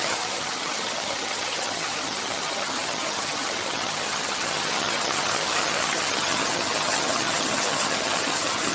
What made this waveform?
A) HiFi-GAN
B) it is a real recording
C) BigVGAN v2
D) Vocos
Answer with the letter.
A